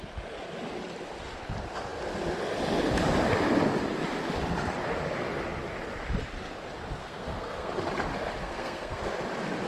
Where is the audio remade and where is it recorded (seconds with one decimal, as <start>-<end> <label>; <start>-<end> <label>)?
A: 0.0-7.0 recorded; 7.0-7.7 remade; 7.7-8.4 recorded; 8.4-9.0 remade; 9.0-9.7 recorded